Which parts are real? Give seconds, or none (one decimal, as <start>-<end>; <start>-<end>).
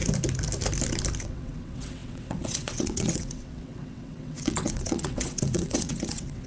0.0-1.2